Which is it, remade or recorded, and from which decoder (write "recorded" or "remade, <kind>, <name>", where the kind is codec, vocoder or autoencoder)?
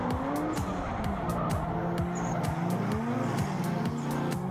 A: recorded